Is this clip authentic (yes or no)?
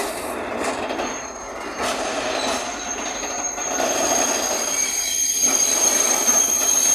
no